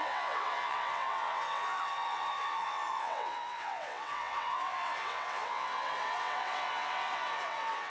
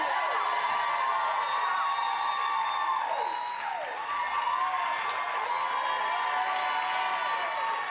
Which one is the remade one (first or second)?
first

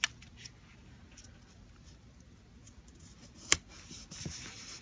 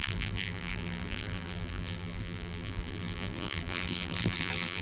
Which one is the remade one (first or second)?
second